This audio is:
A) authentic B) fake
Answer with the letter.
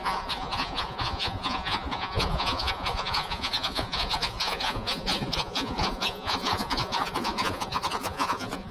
B